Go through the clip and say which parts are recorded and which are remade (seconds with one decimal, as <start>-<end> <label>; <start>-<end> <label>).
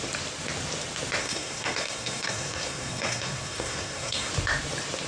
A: 0.0-1.2 recorded; 1.2-4.3 remade; 4.3-5.1 recorded